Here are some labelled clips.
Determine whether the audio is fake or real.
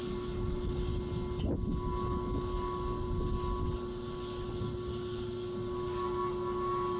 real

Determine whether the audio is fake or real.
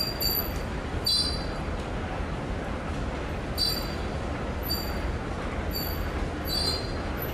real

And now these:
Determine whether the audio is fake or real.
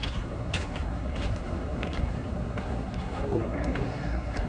fake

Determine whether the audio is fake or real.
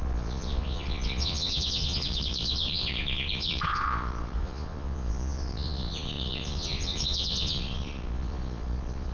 fake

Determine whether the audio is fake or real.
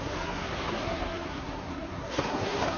fake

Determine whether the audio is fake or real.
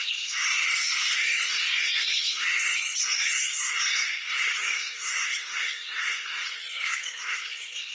fake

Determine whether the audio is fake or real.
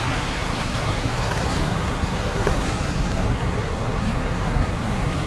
fake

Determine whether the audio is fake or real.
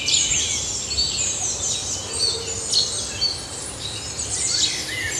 real